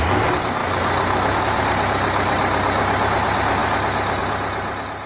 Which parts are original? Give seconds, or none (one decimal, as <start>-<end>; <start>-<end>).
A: 0.0-5.1